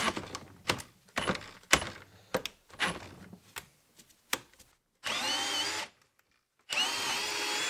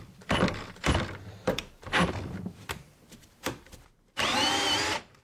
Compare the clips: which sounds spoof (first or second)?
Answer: second